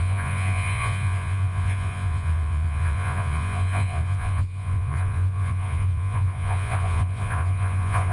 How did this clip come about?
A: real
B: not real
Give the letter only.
B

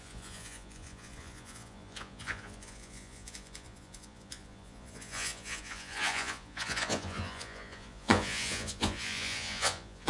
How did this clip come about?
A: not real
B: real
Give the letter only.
A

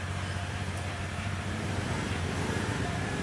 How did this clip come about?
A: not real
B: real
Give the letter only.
A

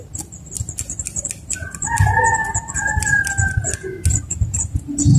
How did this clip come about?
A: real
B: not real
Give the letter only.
A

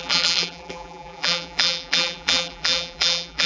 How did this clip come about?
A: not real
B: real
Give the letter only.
A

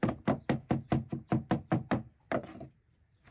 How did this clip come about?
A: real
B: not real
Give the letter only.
B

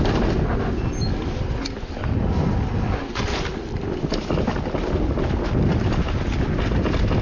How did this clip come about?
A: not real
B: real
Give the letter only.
B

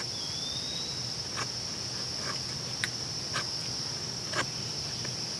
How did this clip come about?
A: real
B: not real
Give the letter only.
A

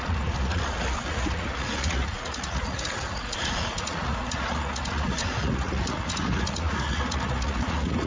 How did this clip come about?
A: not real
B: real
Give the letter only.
A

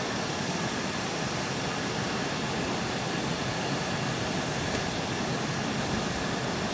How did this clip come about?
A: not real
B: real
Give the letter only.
B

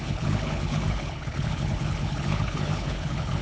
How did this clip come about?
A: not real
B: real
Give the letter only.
A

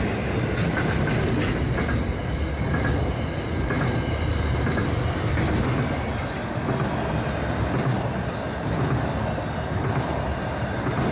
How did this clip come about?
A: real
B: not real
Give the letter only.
A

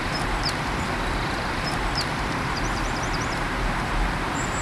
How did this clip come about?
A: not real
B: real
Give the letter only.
A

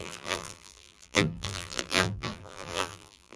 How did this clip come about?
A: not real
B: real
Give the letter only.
A